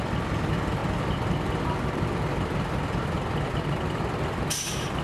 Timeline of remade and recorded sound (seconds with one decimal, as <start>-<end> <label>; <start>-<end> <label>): 0.0-5.0 recorded